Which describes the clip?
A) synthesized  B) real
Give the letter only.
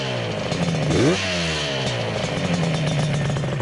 B